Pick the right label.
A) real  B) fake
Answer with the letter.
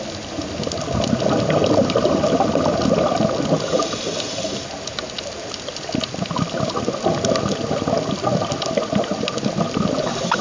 A